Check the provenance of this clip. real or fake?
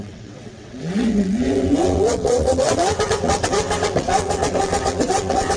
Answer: fake